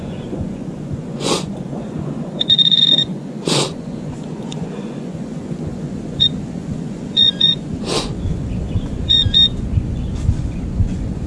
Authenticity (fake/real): fake